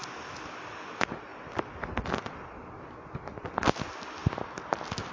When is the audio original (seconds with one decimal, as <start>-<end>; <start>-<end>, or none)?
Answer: 0.0-5.1